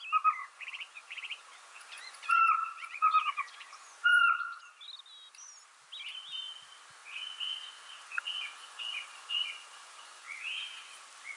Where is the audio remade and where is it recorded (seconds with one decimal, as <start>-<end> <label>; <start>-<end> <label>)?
0.0-0.4 recorded; 0.4-4.6 remade; 4.6-7.0 recorded; 7.0-10.9 remade; 10.9-11.4 recorded